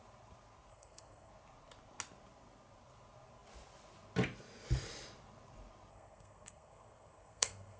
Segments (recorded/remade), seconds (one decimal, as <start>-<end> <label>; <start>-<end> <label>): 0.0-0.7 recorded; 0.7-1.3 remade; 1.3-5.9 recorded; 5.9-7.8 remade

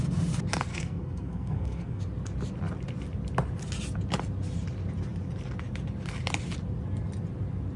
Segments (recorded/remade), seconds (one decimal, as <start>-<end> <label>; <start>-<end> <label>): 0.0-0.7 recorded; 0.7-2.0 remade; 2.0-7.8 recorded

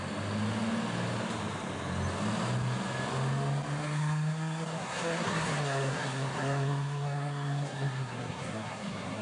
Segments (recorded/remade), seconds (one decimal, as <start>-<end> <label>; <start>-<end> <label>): 0.0-3.8 recorded; 3.8-9.2 remade

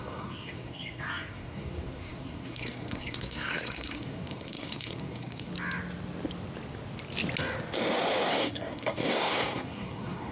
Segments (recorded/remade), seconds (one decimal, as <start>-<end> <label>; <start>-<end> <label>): 0.0-5.5 remade; 5.5-8.3 recorded; 8.3-10.3 remade